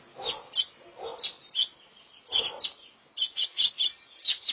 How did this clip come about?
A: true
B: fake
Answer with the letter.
A